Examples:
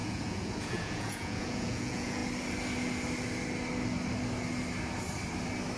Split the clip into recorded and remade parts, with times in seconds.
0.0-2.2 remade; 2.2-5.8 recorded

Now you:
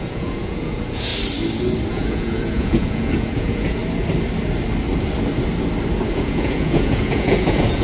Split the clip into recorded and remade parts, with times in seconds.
0.0-1.1 remade; 1.1-1.9 recorded; 1.9-3.8 remade; 3.8-6.1 recorded; 6.1-7.8 remade